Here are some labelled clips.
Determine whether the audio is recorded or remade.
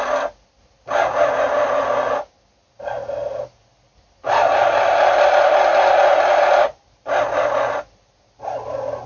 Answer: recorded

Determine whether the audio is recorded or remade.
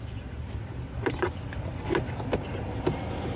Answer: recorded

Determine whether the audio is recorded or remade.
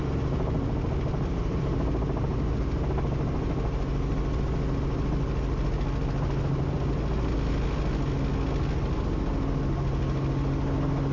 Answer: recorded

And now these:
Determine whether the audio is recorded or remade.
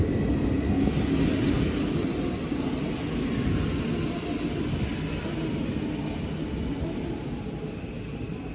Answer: recorded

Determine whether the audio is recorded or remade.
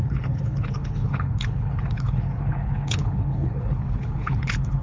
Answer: remade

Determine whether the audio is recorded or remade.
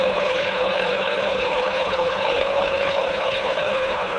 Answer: remade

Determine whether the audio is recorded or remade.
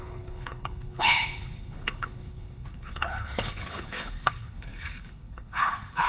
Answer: remade